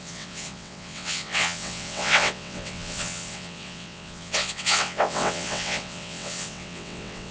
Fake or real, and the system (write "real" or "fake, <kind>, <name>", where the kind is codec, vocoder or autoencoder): fake, vocoder, WaveNeXt